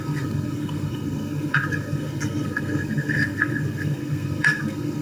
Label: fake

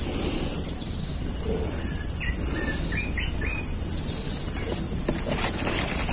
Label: real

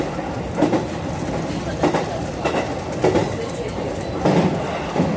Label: real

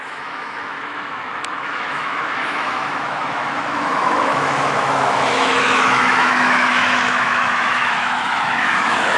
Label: fake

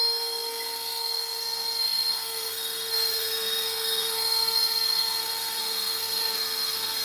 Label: fake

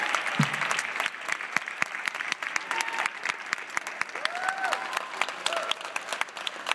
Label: real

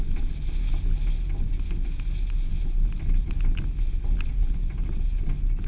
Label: real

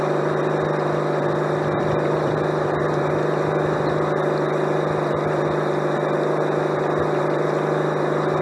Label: real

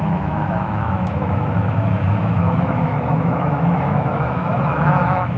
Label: fake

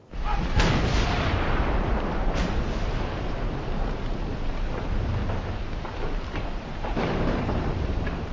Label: fake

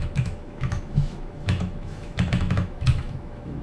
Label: fake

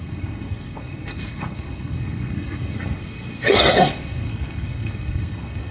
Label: fake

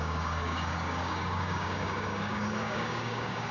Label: fake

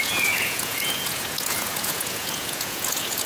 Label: fake